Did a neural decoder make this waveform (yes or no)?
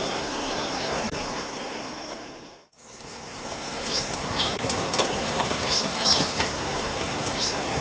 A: yes